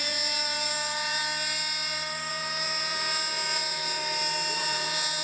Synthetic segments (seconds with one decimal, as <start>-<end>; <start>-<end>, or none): 0.0-1.2; 2.3-4.0; 4.6-5.2